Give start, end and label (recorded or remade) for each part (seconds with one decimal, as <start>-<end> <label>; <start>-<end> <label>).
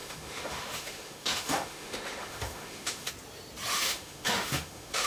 0.0-3.1 remade; 3.1-3.7 recorded; 3.7-5.1 remade